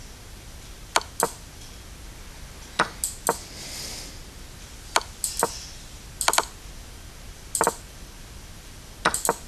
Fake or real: real